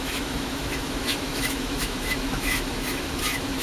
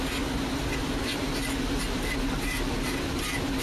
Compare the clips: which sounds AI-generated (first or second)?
first